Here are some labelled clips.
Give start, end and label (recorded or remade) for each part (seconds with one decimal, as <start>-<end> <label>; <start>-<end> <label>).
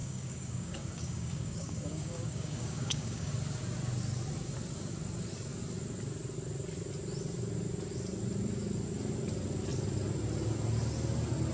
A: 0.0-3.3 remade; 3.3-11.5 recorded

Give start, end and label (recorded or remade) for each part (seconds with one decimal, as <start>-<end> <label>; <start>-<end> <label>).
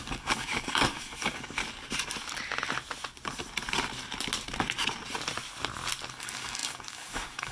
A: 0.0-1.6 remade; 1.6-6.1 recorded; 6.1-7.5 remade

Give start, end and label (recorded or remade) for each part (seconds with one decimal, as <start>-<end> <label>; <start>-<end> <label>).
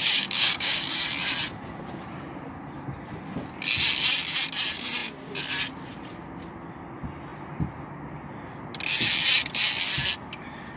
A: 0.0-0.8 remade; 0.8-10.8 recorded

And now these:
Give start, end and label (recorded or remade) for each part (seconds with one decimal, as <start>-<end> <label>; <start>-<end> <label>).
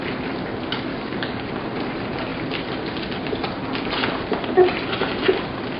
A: 0.0-0.9 recorded; 0.9-1.5 remade; 1.5-5.8 recorded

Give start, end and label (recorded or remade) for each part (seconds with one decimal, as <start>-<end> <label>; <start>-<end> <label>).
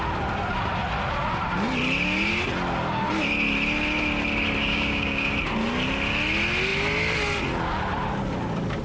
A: 0.0-4.6 recorded; 4.6-5.3 remade; 5.3-8.8 recorded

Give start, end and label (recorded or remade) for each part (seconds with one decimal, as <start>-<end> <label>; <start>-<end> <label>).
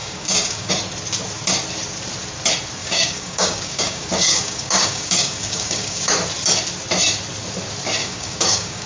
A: 0.0-0.7 remade; 0.7-2.8 recorded; 2.8-6.1 remade; 6.1-8.0 recorded; 8.0-8.9 remade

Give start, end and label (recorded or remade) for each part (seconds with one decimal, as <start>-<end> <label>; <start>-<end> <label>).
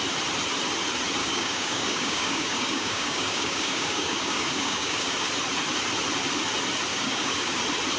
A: 0.0-1.2 recorded; 1.2-5.3 remade; 5.3-6.9 recorded; 6.9-7.6 remade; 7.6-8.0 recorded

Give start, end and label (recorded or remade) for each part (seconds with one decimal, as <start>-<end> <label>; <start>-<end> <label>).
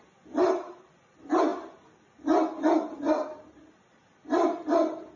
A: 0.0-5.2 recorded